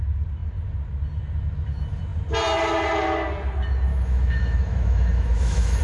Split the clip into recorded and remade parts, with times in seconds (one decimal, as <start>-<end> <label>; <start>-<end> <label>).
0.0-3.9 recorded; 3.9-5.8 remade